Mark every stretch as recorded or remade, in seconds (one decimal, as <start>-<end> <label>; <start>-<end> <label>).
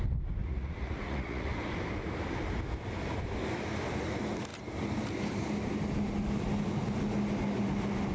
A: 0.0-0.4 recorded; 0.4-1.5 remade; 1.5-8.1 recorded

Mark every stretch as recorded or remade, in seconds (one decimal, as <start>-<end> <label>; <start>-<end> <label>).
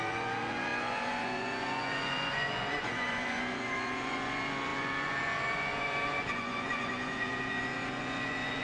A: 0.0-8.6 remade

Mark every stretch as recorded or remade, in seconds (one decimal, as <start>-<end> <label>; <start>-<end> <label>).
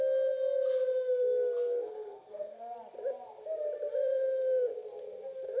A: 0.0-1.9 recorded; 1.9-2.6 remade; 2.6-5.6 recorded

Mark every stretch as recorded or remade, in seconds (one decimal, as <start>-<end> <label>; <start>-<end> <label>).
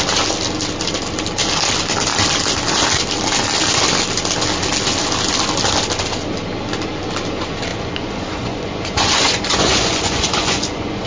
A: 0.0-7.7 recorded; 7.7-11.1 remade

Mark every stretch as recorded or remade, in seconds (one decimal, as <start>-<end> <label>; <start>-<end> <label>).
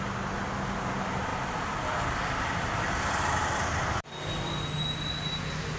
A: 0.0-1.3 recorded; 1.3-4.8 remade; 4.8-5.8 recorded